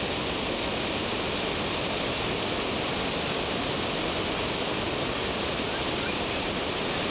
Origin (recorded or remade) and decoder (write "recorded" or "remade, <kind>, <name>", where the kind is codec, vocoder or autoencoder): recorded